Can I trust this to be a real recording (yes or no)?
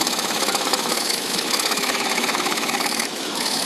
no